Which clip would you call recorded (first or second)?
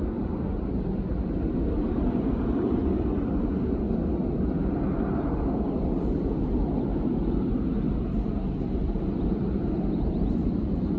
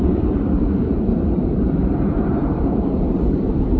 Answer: first